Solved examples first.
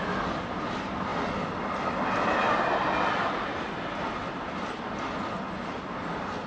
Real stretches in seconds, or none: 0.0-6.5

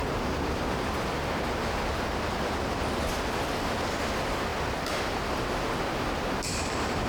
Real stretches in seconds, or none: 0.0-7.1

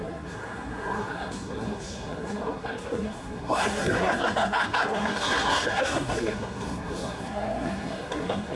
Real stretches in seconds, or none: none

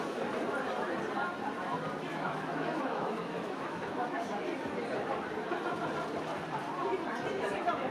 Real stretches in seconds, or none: 0.0-2.1; 4.4-7.9